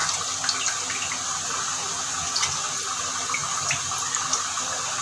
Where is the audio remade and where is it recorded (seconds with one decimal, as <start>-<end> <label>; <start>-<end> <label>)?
0.0-5.0 recorded

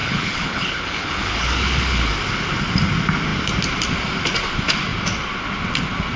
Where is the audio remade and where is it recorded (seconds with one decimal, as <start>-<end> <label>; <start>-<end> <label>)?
0.0-2.1 remade; 2.1-6.2 recorded

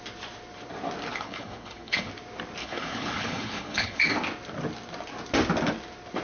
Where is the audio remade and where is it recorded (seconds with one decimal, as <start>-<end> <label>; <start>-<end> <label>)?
0.0-1.1 recorded; 1.1-2.1 remade; 2.1-2.6 recorded; 2.6-4.1 remade; 4.1-6.2 recorded

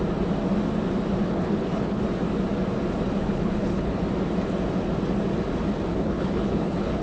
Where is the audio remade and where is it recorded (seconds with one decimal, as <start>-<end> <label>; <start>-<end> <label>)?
0.0-1.2 recorded; 1.2-2.0 remade; 2.0-3.2 recorded; 3.2-4.0 remade; 4.0-5.9 recorded; 5.9-7.0 remade

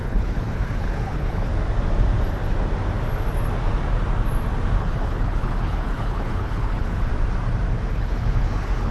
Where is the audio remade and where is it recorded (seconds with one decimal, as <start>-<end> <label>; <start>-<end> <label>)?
0.0-1.5 remade; 1.5-4.8 recorded; 4.8-7.1 remade; 7.1-7.9 recorded; 7.9-8.9 remade

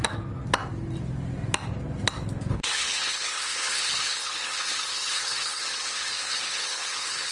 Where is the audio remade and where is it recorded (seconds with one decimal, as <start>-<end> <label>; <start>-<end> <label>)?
0.0-2.5 recorded; 2.5-7.3 remade